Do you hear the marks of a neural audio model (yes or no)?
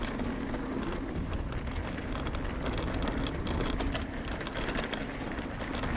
no